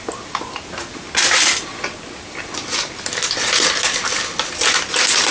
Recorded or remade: recorded